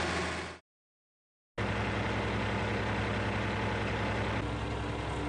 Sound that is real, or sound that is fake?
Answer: real